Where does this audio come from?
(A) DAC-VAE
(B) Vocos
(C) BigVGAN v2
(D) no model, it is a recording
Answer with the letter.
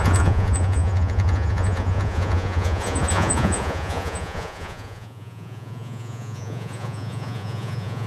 B